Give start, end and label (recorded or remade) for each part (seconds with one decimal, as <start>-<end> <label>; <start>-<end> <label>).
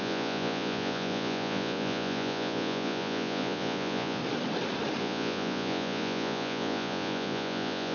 0.0-4.2 remade; 4.2-5.0 recorded; 5.0-7.9 remade